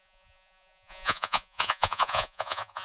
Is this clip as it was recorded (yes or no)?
no